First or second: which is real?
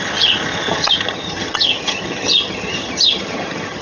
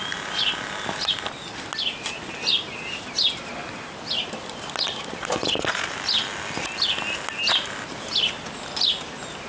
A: second